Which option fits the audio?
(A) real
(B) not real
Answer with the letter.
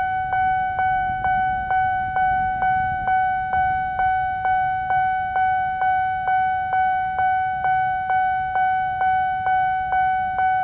A